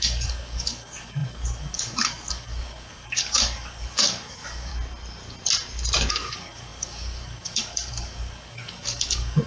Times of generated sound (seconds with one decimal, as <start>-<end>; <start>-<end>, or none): 0.0-4.7; 6.1-9.5